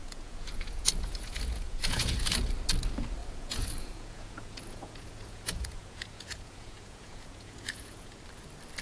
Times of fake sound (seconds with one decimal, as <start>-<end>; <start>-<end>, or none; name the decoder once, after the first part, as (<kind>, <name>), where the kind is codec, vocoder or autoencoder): 0.0-2.4 (vocoder, Vocos); 3.2-8.2